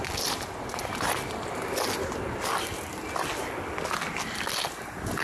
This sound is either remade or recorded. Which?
recorded